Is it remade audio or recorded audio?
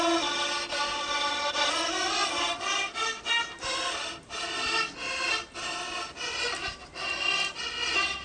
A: recorded